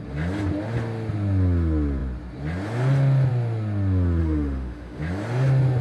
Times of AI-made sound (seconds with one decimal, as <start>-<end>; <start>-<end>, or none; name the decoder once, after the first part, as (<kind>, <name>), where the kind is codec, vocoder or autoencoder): 4.2-5.0 (autoencoder, DAC-VAE)